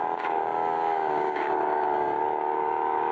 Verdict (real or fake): fake